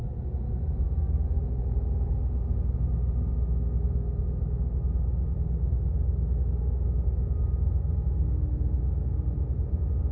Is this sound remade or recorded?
recorded